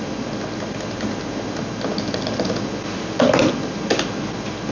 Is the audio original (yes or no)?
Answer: yes